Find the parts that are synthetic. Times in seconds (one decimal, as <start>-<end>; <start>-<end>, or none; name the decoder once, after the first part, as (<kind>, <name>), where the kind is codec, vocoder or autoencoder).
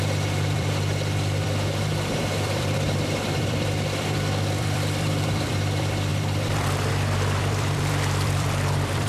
0.0-9.1 (vocoder, BigVGAN v2)